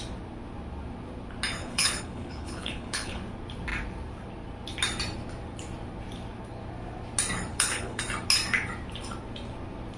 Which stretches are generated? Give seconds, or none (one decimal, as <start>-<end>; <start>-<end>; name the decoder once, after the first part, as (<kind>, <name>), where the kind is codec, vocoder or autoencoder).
1.6-3.2 (codec, HILCodec); 7.5-8.0